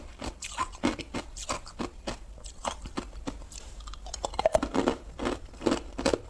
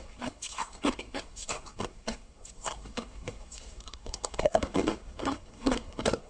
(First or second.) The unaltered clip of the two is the first